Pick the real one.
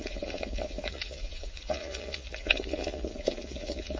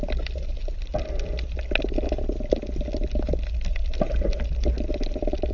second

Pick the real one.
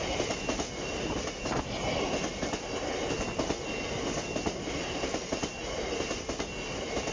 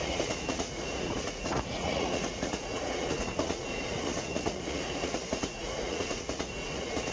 first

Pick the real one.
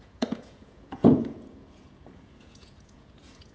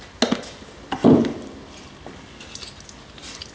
second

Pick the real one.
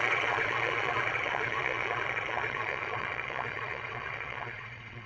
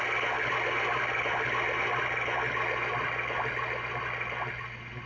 second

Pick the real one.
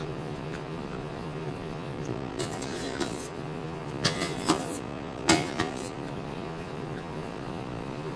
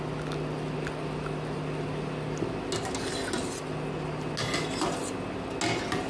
second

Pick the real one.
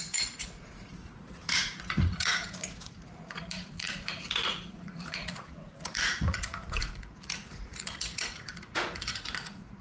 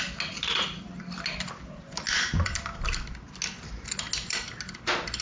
second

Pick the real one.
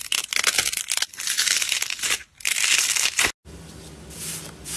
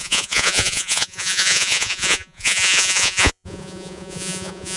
first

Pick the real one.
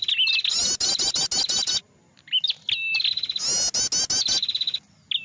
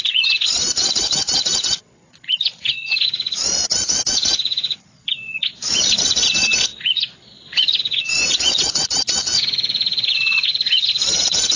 first